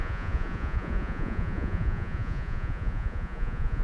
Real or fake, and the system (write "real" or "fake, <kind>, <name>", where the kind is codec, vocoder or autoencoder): fake, vocoder, Vocos